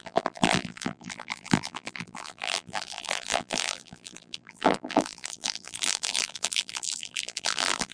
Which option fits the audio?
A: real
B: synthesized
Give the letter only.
B